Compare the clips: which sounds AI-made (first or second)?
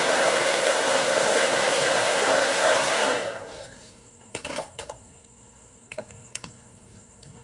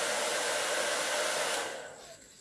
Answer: first